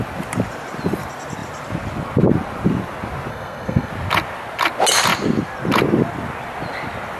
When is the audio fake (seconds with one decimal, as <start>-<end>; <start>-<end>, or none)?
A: 3.3-3.9